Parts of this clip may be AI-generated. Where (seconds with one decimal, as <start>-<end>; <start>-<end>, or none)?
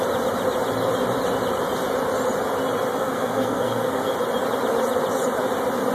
3.0-4.1